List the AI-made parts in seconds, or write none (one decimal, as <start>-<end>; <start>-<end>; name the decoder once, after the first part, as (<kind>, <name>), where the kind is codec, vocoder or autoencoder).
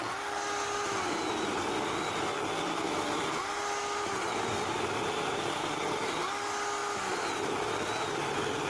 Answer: none